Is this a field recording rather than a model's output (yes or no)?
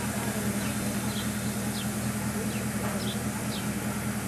yes